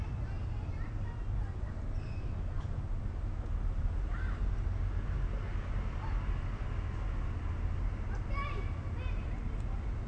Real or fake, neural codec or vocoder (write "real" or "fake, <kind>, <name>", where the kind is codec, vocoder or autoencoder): real